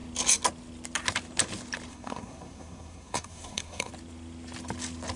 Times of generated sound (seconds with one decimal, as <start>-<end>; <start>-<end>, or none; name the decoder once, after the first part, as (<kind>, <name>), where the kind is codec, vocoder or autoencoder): 1.9-3.9 (codec, SNAC)